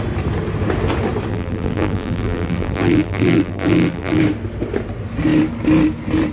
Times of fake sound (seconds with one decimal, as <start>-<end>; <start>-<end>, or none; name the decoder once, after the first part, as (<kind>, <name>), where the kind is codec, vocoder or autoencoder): 1.3-4.2 (vocoder, BigVGAN v2)